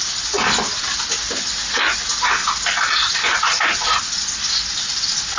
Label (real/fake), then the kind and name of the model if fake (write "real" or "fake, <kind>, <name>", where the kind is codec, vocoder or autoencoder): real